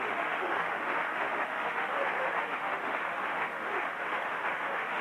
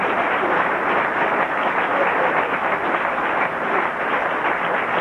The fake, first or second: first